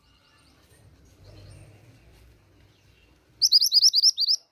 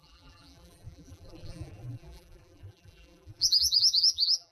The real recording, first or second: first